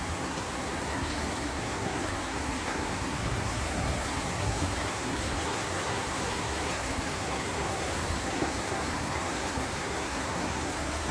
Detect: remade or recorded remade